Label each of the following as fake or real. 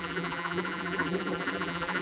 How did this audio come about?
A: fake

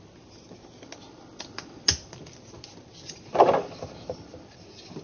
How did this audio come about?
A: real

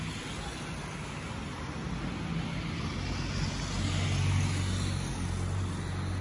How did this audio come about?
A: real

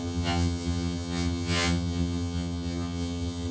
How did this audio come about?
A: fake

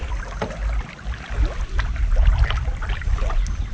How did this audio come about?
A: real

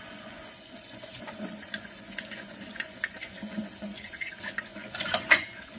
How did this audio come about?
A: fake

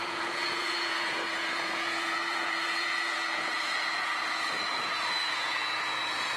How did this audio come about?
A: fake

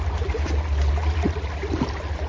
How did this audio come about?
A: real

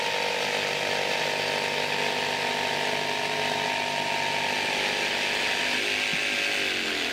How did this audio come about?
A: real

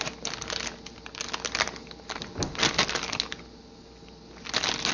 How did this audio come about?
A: real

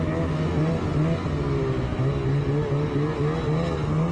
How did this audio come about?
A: real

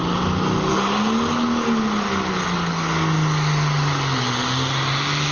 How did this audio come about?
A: real